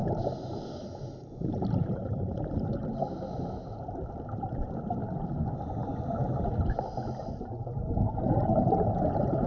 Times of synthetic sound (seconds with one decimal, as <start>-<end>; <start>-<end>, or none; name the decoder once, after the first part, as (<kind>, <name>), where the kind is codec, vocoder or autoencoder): 1.5-5.0 (vocoder, BigVGAN v2); 7.3-9.5